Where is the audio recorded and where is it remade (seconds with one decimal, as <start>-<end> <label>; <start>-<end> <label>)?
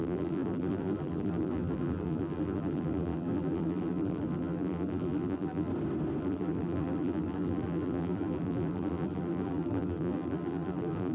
0.0-5.7 remade; 5.7-6.2 recorded; 6.2-11.1 remade